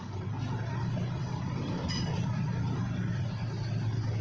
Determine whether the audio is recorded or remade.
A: recorded